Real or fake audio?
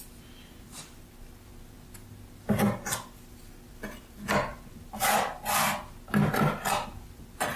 real